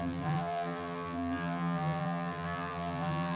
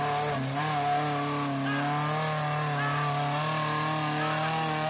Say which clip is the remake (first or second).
first